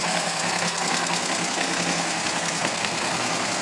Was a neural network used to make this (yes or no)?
yes